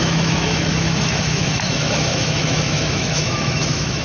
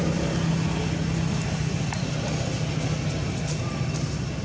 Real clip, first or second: second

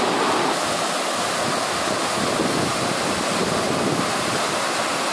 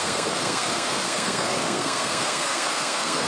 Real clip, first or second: first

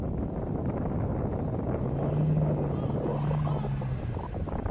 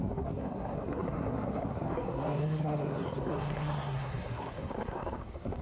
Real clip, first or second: first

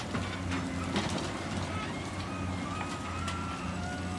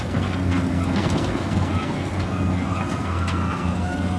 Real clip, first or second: first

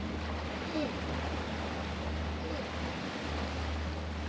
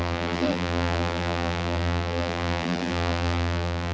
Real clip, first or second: first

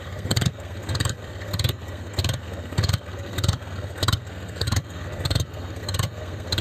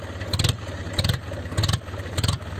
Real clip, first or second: second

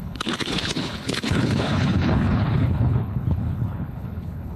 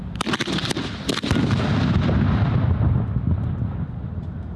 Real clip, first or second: second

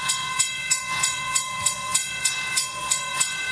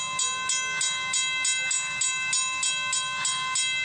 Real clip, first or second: second